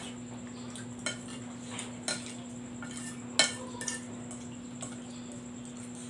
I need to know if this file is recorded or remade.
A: recorded